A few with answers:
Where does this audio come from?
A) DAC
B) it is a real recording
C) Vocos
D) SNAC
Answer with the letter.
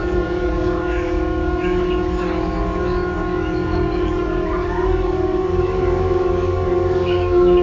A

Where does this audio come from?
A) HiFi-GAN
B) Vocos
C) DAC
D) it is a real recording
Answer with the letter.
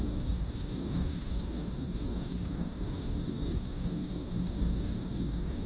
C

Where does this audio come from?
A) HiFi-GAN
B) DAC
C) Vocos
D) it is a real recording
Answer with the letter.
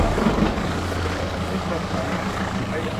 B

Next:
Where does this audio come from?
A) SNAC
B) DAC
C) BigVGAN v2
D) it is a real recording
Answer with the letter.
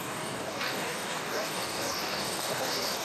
B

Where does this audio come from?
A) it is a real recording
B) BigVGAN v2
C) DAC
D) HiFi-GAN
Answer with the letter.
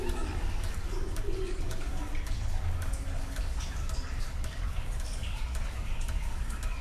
C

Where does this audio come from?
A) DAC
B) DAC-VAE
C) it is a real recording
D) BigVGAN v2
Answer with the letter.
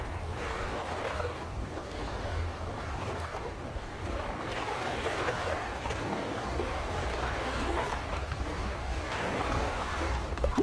A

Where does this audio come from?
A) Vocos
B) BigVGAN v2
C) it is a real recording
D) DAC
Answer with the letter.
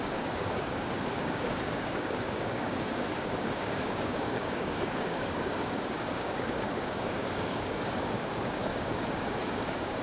D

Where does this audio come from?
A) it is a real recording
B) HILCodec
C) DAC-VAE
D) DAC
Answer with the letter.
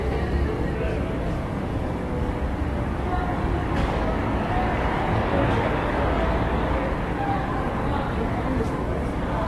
D